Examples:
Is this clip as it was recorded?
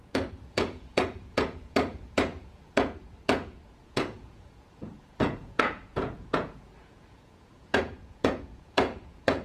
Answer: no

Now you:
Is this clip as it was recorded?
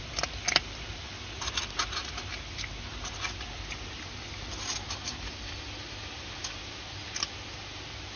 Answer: yes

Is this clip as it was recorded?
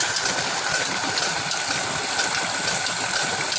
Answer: yes